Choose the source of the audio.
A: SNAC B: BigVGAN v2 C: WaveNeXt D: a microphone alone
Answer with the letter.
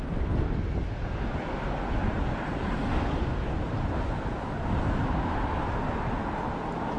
D